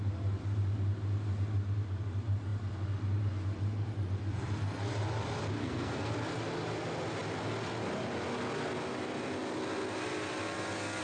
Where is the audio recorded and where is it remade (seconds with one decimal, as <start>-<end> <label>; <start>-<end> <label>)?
0.0-5.6 recorded; 5.6-6.1 remade; 6.1-11.0 recorded